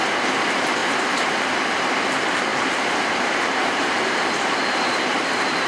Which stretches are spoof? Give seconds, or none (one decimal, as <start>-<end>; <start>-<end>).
0.8-1.9; 2.5-5.7